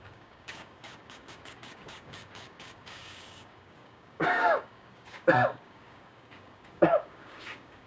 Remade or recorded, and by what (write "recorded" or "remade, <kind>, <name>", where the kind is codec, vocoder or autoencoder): remade, codec, DAC